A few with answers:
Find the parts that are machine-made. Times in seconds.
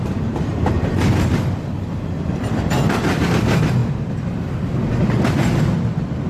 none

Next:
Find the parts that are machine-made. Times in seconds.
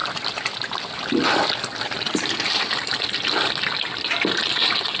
none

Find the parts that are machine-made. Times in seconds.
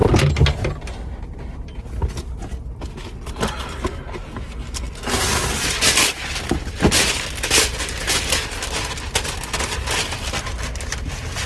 none